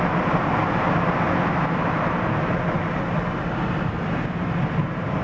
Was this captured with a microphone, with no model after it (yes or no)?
yes